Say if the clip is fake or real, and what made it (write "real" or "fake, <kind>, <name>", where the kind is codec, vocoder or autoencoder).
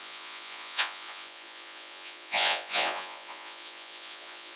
fake, vocoder, Vocos